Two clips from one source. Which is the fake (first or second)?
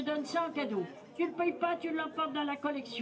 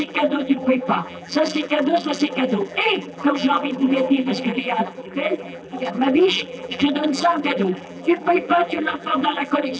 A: second